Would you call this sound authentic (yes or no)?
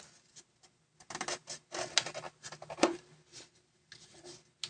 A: yes